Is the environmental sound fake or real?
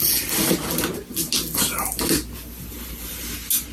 real